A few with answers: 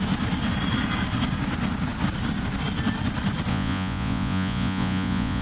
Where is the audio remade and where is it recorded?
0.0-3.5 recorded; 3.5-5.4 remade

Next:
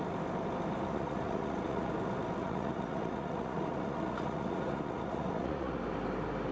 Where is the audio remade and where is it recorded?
0.0-0.9 recorded; 0.9-1.9 remade; 1.9-2.4 recorded; 2.4-5.8 remade; 5.8-6.5 recorded

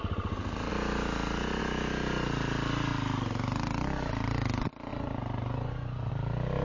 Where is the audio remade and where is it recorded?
0.0-4.9 recorded; 4.9-6.1 remade; 6.1-6.6 recorded

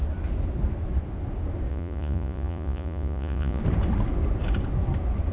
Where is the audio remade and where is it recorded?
0.0-1.7 recorded; 1.7-3.6 remade; 3.6-5.3 recorded

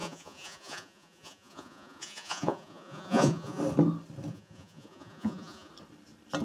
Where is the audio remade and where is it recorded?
0.0-3.6 remade; 3.6-4.3 recorded; 4.3-5.7 remade; 5.7-6.4 recorded

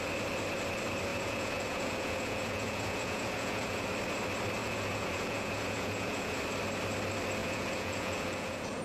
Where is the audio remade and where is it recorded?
0.0-1.1 recorded; 1.1-3.9 remade; 3.9-4.6 recorded; 4.6-6.4 remade; 6.4-7.4 recorded; 7.4-8.8 remade

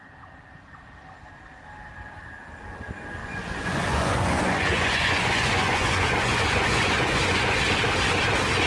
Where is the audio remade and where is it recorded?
0.0-3.2 recorded; 3.2-7.6 remade; 7.6-8.7 recorded